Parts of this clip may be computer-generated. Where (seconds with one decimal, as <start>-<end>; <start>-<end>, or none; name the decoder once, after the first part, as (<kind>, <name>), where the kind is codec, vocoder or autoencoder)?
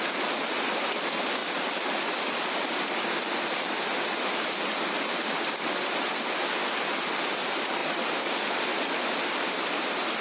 0.0-10.2 (vocoder, BigVGAN v2)